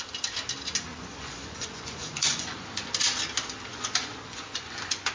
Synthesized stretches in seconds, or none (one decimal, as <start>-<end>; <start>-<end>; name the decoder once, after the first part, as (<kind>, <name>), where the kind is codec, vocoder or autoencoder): 0.9-2.9 (vocoder, Vocos); 3.7-5.1